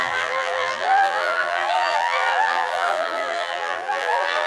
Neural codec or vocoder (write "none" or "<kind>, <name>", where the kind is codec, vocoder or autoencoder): vocoder, BigVGAN v2